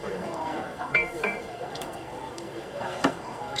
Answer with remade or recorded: remade